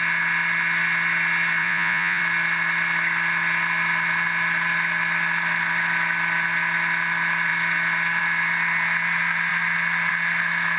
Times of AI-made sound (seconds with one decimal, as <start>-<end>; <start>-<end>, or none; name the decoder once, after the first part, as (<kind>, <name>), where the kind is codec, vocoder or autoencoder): 1.6-2.2 (vocoder, Vocos)